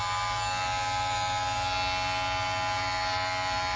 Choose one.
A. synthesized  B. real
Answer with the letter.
B